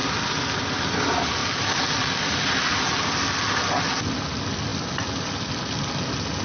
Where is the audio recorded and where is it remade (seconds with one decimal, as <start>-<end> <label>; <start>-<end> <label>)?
0.0-6.4 recorded